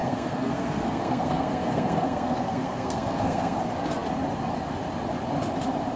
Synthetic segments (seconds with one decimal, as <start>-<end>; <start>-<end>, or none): 0.0-3.6